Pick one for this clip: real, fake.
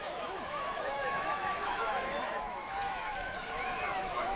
fake